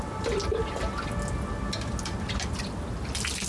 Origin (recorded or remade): recorded